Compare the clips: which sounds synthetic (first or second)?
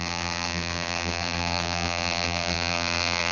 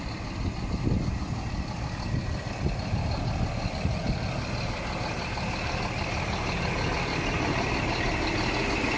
first